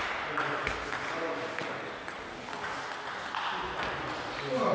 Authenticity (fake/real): real